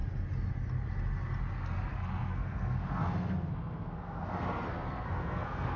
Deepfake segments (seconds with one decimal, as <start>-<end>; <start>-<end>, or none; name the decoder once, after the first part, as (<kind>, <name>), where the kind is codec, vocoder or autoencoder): 1.9-5.8 (codec, SNAC)